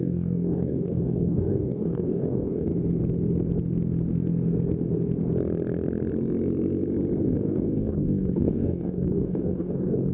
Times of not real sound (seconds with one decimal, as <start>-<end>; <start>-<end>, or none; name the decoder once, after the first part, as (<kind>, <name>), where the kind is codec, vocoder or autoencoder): 0.0-2.7 (codec, DAC); 7.2-10.1